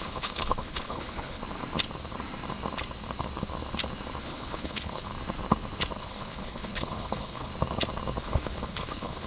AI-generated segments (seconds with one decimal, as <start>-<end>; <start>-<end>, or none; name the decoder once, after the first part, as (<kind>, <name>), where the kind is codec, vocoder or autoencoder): 0.0-1.4 (codec, HILCodec); 4.2-5.1; 6.0-7.5; 8.2-9.3